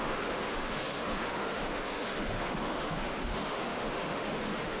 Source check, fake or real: fake